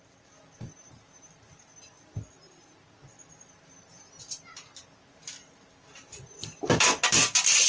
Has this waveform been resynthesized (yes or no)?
no